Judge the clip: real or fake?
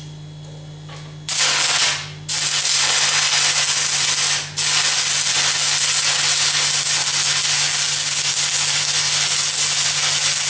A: real